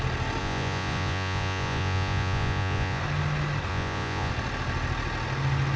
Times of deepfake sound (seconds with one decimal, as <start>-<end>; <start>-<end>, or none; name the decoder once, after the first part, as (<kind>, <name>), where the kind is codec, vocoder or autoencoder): 0.4-3.0 (vocoder, Vocos); 3.7-4.3